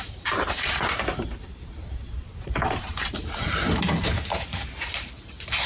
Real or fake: fake